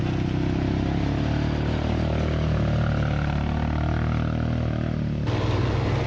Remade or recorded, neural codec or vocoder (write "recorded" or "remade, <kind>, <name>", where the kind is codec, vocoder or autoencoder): recorded